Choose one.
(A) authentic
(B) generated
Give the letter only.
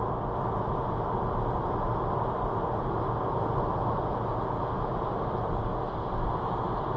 A